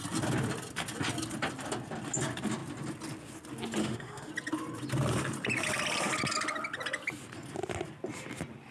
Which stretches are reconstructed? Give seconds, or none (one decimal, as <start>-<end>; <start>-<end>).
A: 3.8-4.3